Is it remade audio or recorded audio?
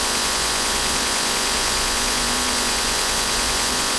remade